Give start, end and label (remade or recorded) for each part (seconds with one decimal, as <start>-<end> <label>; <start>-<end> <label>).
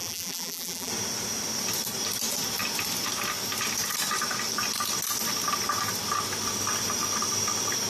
0.0-0.9 remade; 0.9-7.9 recorded